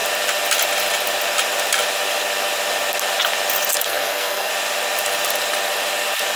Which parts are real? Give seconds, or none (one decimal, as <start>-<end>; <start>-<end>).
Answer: 0.0-3.8; 4.5-6.4